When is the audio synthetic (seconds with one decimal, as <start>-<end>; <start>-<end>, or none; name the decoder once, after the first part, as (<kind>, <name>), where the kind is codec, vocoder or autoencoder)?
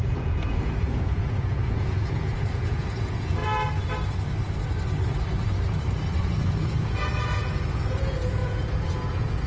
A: 0.0-3.4 (vocoder, Vocos); 6.6-9.5